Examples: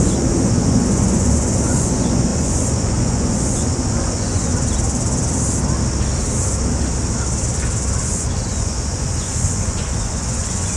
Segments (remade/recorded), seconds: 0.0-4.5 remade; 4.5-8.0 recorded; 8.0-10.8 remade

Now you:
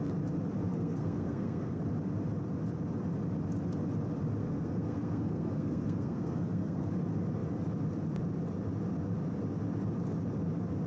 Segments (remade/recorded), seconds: 0.0-0.7 recorded; 0.7-1.8 remade; 1.8-4.4 recorded; 4.4-6.9 remade; 6.9-10.9 recorded

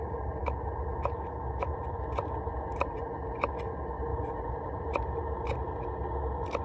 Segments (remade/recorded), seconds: 0.0-3.0 remade; 3.0-4.1 recorded; 4.1-5.8 remade; 5.8-6.6 recorded

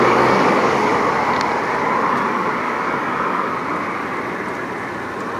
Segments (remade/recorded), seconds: 0.0-0.9 remade; 0.9-1.9 recorded; 1.9-3.5 remade; 3.5-5.4 recorded